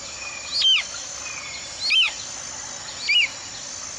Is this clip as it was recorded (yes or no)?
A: yes